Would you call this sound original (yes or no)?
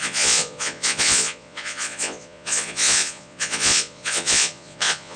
no